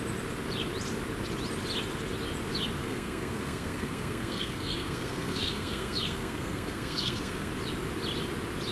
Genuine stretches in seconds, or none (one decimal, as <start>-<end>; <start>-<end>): 0.0-2.8; 7.5-8.7